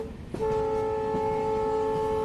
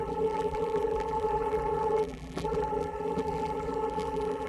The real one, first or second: first